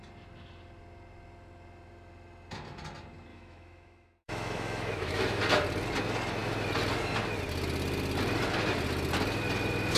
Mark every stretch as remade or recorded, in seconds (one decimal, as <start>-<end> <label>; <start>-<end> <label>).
0.0-3.3 recorded; 3.3-5.4 remade; 5.4-10.0 recorded